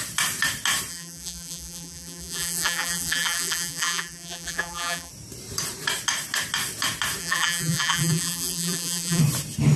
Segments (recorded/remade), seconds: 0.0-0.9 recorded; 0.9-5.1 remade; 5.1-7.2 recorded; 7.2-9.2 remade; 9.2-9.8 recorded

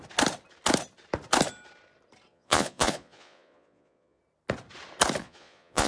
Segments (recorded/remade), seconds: 0.0-2.3 recorded; 2.3-4.2 remade; 4.2-5.2 recorded; 5.2-5.9 remade

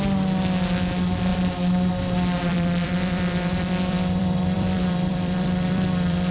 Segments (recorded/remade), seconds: 0.0-2.5 recorded; 2.5-6.3 remade

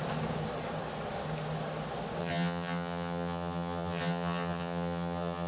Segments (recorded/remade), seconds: 0.0-2.2 recorded; 2.2-5.5 remade

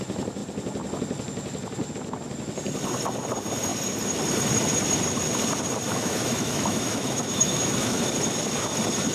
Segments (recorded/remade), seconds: 0.0-5.9 recorded; 5.9-8.0 remade; 8.0-9.1 recorded

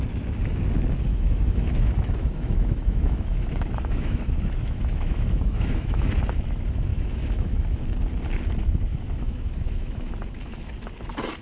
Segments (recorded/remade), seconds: 0.0-1.1 recorded; 1.1-6.1 remade; 6.1-6.9 recorded; 6.9-7.8 remade; 7.8-8.9 recorded; 8.9-10.1 remade; 10.1-11.4 recorded

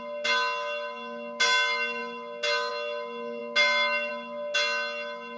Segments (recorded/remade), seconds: 0.0-5.4 recorded

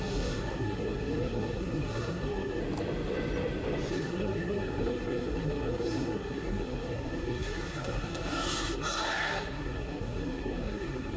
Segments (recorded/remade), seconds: 0.0-2.6 remade; 2.6-3.9 recorded; 3.9-11.2 remade